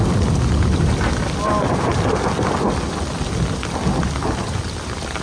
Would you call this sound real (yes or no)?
yes